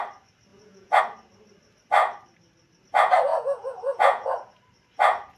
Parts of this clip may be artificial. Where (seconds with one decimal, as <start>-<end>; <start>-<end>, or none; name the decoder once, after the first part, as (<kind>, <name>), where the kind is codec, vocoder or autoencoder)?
0.5-1.0 (vocoder, Vocos); 3.3-4.6